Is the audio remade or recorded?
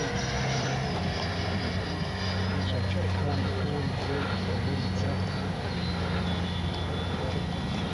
recorded